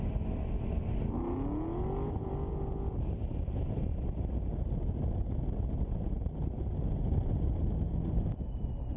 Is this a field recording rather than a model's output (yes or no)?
yes